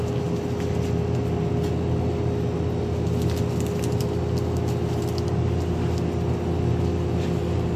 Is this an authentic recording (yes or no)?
yes